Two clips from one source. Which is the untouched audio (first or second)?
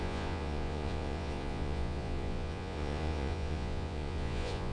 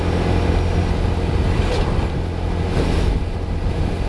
second